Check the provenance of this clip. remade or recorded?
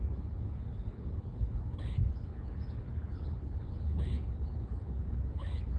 remade